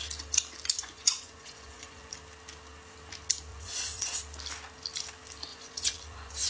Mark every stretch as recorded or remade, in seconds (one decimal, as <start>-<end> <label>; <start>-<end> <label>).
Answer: 0.0-0.8 recorded; 0.8-2.1 remade; 2.1-3.5 recorded; 3.5-4.1 remade; 4.1-5.5 recorded; 5.5-6.5 remade

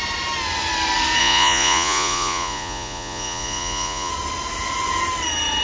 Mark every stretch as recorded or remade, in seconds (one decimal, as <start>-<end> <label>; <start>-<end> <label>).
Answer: 0.0-1.2 recorded; 1.2-4.1 remade; 4.1-5.6 recorded

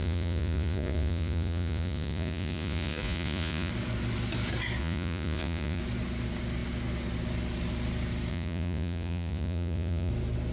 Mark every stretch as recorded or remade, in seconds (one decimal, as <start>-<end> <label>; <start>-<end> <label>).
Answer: 0.0-3.7 remade; 3.7-4.8 recorded; 4.8-5.8 remade; 5.8-8.3 recorded; 8.3-10.1 remade; 10.1-10.5 recorded

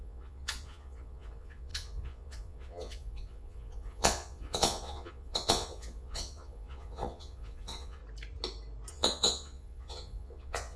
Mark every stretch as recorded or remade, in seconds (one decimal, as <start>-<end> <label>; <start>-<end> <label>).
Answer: 0.0-8.0 remade; 8.0-8.9 recorded; 8.9-10.8 remade